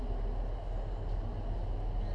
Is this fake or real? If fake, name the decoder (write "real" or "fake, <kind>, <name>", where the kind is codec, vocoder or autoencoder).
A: real